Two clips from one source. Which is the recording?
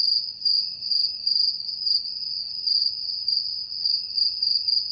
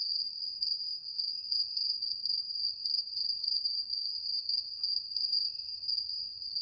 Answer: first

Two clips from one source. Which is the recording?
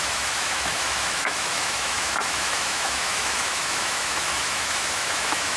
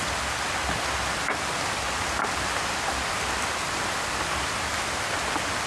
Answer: second